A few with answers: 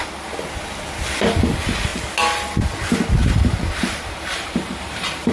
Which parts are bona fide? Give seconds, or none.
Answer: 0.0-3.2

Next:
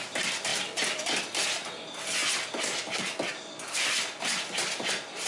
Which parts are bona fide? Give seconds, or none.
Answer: 0.5-1.2; 2.2-3.7

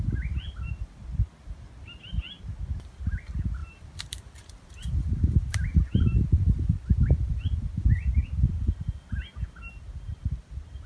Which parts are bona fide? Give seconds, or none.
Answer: 0.0-3.6; 5.1-5.7; 6.7-10.9

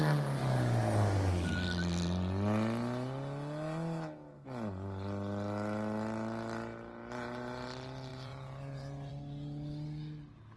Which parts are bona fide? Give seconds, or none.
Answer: 0.0-8.1; 9.1-10.6

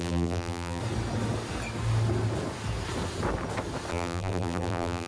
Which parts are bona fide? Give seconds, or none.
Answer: 0.8-3.9

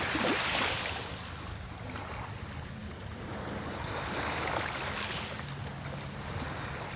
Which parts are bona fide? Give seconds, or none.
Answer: 0.0-7.0

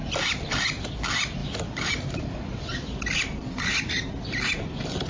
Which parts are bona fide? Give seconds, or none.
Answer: 0.0-1.4; 4.2-5.1